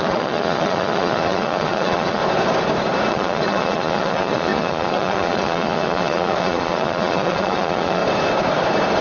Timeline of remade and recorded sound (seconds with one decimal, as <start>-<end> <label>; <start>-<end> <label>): 0.0-2.2 remade; 2.2-3.1 recorded; 3.1-8.0 remade; 8.0-9.0 recorded